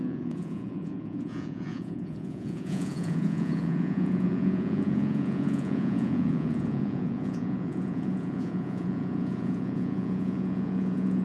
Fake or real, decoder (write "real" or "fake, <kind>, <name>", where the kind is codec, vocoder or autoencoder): fake, vocoder, Vocos